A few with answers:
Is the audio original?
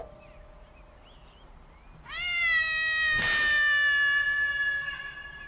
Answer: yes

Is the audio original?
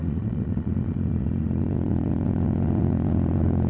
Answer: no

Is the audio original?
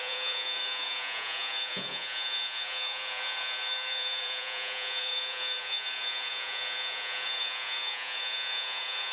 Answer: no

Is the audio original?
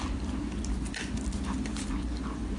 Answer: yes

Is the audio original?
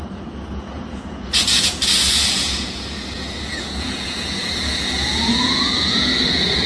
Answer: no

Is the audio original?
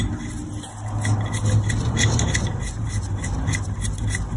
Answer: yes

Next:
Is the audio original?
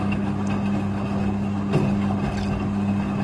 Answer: yes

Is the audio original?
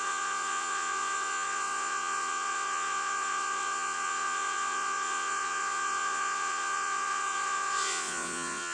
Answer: no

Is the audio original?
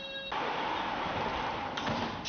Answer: yes